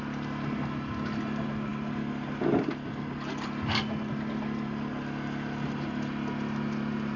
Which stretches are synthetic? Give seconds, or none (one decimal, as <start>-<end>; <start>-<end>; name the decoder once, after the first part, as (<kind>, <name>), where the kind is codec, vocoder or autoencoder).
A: none